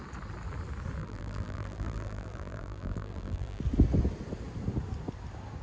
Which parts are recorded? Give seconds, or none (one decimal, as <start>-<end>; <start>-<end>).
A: 0.0-1.0; 3.6-5.6